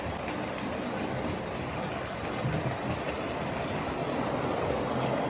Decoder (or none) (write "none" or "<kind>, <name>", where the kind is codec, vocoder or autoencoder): none